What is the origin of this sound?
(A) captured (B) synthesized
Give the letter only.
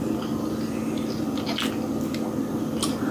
A